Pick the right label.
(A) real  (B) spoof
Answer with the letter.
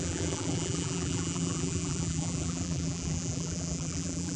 B